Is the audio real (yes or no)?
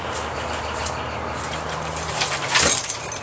yes